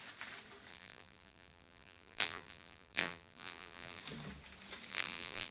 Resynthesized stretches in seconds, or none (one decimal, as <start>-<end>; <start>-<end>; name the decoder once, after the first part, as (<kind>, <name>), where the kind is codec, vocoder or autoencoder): 0.7-4.0 (vocoder, BigVGAN v2); 4.9-5.5

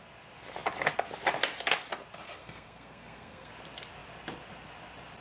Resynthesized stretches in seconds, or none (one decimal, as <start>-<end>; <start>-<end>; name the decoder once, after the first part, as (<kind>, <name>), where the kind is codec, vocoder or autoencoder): 2.4-3.5 (codec, SNAC)

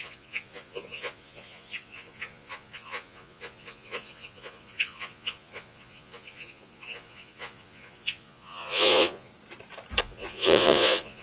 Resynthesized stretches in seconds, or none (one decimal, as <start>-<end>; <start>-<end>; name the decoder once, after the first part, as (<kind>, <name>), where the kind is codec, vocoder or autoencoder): 0.0-9.3 (vocoder, Vocos); 10.0-11.2

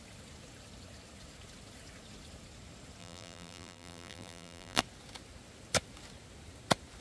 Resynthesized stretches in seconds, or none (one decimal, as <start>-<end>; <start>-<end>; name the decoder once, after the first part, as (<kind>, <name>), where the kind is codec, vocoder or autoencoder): 3.0-4.8 (vocoder, BigVGAN v2)

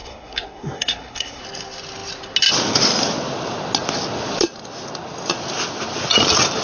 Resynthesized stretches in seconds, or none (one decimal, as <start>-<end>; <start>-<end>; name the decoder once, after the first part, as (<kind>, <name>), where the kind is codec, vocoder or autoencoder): 0.0-1.4 (codec, SNAC)

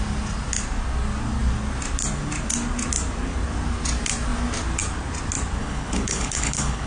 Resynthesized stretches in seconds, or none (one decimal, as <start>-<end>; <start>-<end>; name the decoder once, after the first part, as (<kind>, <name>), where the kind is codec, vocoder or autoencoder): 5.6-6.9 (codec, HILCodec)